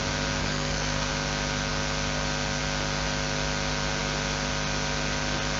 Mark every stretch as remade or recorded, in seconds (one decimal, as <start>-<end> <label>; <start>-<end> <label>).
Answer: 0.0-0.4 recorded; 0.4-1.1 remade; 1.1-5.6 recorded